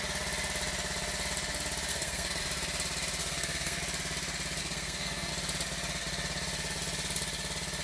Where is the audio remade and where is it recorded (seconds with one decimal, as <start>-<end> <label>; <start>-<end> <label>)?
0.0-1.9 recorded; 1.9-2.4 remade; 2.4-3.2 recorded; 3.2-3.8 remade; 3.8-4.6 recorded; 4.6-5.3 remade; 5.3-7.8 recorded